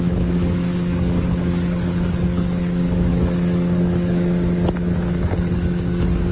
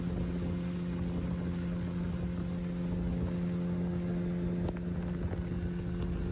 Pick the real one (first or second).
second